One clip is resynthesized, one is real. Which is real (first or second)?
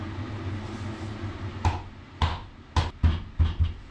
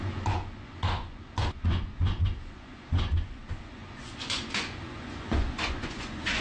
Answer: first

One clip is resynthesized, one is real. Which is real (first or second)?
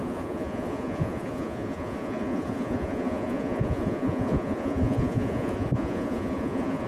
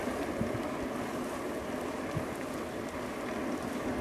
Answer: second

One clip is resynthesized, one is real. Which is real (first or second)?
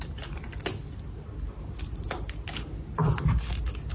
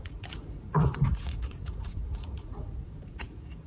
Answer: first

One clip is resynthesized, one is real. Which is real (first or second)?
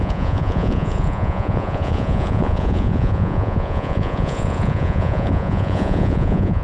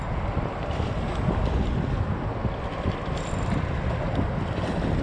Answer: second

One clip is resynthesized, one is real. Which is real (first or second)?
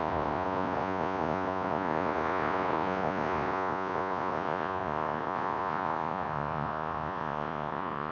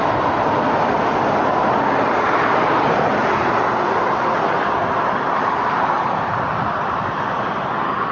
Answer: second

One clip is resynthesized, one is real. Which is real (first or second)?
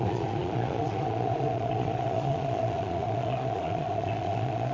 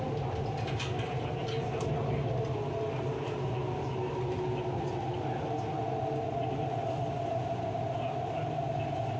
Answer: second